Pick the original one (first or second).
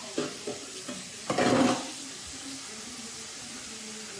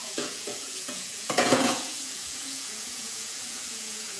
first